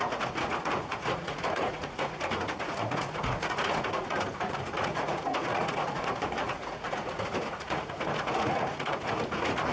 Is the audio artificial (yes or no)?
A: yes